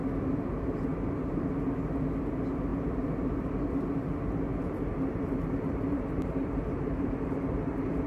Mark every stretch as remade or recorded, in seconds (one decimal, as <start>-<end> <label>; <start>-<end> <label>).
0.0-0.9 recorded; 0.9-1.5 remade; 1.5-2.7 recorded; 2.7-3.6 remade; 3.6-4.5 recorded; 4.5-8.1 remade